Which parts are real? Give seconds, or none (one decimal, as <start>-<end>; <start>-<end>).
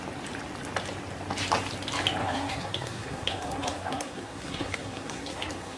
0.0-2.2